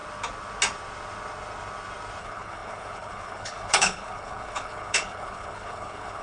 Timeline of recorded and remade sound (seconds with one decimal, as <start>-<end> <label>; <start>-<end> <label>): 0.0-2.2 recorded; 2.2-6.2 remade